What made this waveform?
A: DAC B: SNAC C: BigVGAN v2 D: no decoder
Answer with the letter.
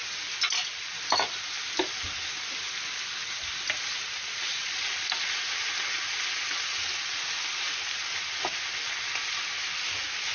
D